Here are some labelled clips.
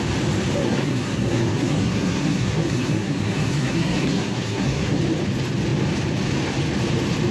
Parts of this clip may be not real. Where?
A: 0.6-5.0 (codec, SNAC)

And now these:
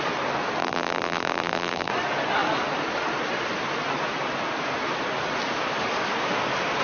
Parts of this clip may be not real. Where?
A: 0.6-1.9 (vocoder, BigVGAN v2)

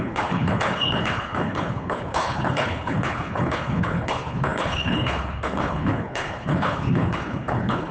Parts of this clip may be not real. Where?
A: 0.0-7.9 (codec, HILCodec)

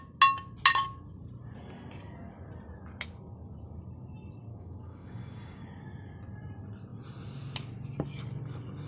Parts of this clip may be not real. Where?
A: 4.5-5.7 (codec, DAC)

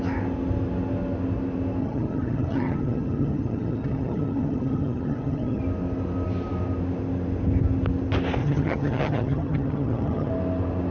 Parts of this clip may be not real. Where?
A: 1.8-5.6 (vocoder, HiFi-GAN); 8.4-10.3